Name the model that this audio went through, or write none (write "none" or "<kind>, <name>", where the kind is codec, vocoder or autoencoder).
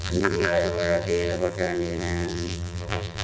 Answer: vocoder, BigVGAN v2